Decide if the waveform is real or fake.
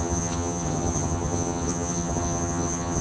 fake